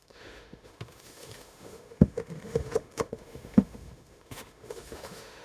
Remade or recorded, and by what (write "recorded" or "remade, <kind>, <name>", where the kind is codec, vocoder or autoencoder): remade, autoencoder, DAC-VAE